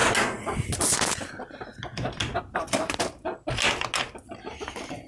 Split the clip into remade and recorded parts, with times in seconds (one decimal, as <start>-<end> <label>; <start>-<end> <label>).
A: 0.0-5.1 recorded